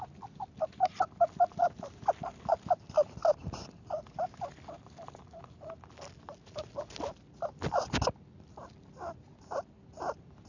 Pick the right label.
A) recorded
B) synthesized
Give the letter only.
A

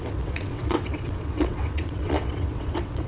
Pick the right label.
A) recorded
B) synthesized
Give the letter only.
B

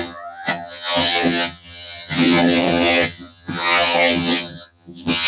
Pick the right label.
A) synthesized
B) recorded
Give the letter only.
A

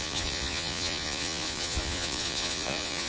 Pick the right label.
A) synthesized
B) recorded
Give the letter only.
A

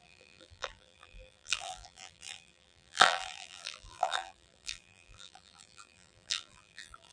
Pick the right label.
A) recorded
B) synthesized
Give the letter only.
B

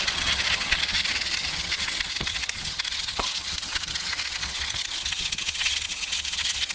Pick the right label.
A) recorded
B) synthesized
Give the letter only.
B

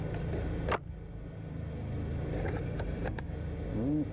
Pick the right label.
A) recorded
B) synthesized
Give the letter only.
A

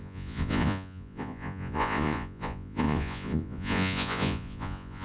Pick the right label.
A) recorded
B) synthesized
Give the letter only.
B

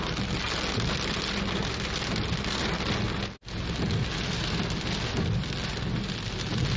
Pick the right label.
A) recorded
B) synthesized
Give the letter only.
A